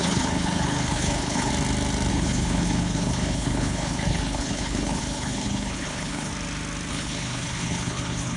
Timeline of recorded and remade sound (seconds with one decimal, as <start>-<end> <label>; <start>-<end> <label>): 0.0-1.5 remade; 1.5-2.1 recorded; 2.1-6.3 remade; 6.3-6.9 recorded; 6.9-8.4 remade